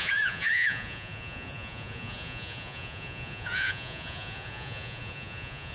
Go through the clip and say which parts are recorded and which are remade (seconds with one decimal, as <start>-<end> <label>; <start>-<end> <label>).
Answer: 0.0-5.7 remade